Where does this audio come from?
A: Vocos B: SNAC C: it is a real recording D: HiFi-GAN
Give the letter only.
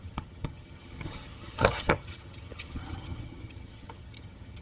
D